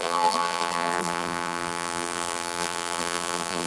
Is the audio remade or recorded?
remade